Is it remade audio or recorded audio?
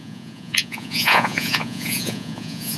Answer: remade